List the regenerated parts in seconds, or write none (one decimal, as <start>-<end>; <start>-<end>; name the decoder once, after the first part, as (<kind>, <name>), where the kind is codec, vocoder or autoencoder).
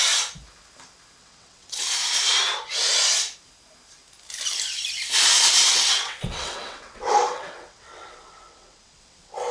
1.2-1.8 (vocoder, WaveNeXt); 5.7-9.5